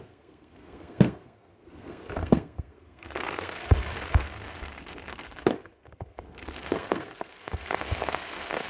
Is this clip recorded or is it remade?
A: remade